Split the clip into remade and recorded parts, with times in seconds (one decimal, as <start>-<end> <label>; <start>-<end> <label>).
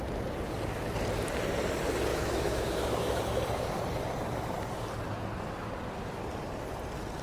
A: 0.0-2.1 recorded; 2.1-3.2 remade; 3.2-7.2 recorded